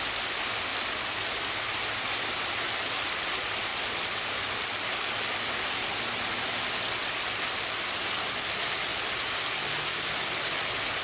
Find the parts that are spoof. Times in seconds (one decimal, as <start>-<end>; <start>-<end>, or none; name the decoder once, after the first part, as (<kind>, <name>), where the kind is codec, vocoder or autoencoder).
none